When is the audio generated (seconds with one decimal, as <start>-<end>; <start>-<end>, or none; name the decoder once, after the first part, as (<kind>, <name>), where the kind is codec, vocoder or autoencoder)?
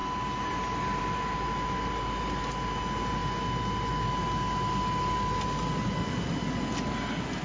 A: none